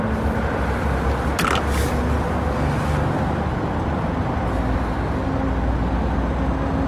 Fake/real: real